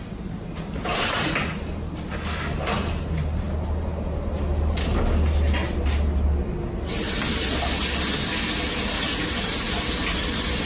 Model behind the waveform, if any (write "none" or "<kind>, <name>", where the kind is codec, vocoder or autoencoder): none